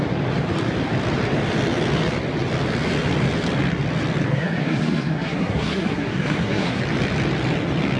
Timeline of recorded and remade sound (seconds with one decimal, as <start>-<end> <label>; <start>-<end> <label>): 0.0-4.3 recorded; 4.3-6.8 remade; 6.8-8.0 recorded